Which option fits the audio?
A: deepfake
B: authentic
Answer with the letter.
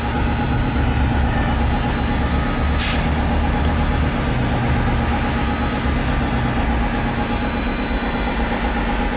B